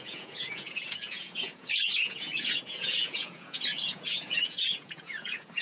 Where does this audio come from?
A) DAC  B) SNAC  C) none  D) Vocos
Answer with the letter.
D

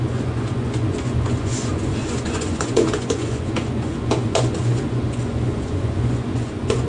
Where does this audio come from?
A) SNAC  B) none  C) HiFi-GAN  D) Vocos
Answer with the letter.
D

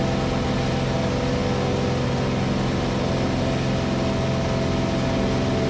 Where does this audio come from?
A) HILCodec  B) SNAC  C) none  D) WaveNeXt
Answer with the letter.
C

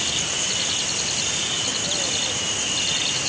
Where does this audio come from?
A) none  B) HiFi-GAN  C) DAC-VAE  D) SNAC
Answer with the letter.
A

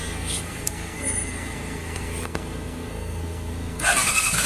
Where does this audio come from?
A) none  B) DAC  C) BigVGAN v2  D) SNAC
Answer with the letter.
D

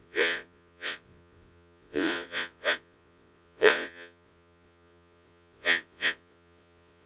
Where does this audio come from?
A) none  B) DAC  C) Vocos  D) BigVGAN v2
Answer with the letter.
C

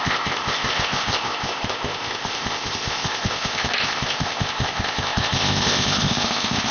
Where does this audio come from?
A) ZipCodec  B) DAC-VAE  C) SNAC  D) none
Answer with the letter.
A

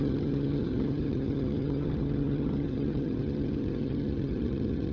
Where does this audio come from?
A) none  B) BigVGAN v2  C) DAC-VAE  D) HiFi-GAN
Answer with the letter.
D